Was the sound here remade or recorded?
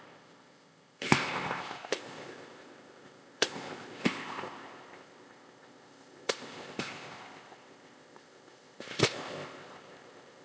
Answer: remade